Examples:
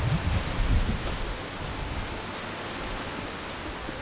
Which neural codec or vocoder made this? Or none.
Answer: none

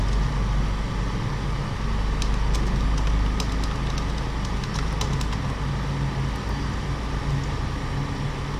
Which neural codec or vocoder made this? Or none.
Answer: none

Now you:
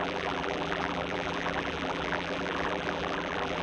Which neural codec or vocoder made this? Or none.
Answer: vocoder, BigVGAN v2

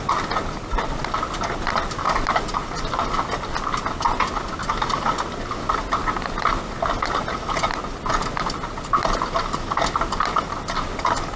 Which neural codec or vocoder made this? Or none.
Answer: none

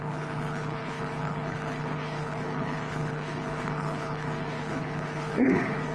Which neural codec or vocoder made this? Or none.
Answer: codec, HILCodec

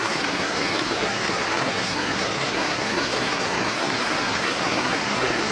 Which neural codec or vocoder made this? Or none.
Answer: codec, SNAC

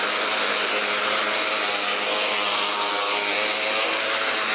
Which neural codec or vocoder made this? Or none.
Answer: none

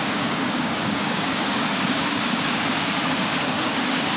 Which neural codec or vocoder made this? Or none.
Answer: codec, DAC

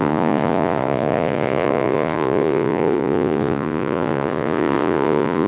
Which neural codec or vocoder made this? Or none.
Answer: vocoder, Vocos